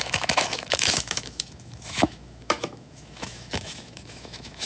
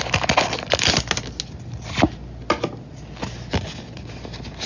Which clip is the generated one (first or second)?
first